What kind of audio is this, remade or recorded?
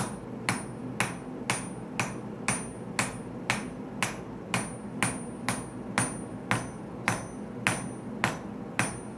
recorded